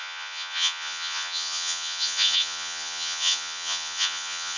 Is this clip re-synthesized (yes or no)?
yes